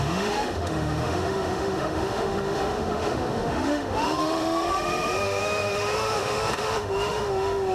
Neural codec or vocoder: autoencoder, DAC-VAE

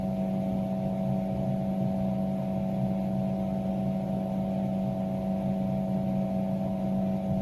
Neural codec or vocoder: none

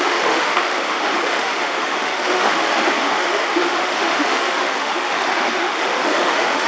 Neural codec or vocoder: autoencoder, DAC-VAE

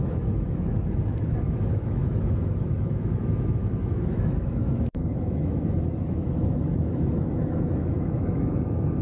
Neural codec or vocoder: autoencoder, DAC-VAE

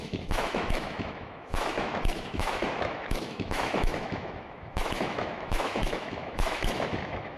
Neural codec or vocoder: autoencoder, DAC-VAE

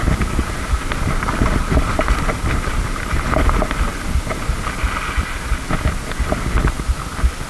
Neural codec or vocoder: none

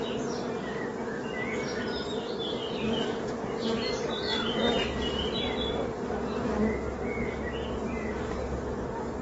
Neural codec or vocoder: none